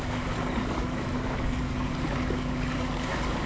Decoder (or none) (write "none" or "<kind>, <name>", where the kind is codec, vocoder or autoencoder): codec, DAC